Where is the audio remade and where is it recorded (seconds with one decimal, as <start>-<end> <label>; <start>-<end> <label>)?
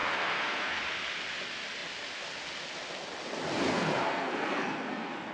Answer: 0.0-0.8 remade; 0.8-3.7 recorded; 3.7-5.3 remade